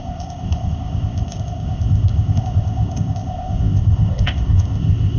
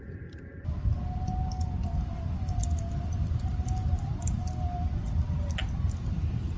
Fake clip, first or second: first